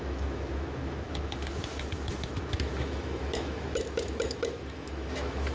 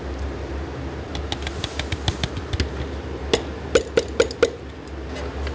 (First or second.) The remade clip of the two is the first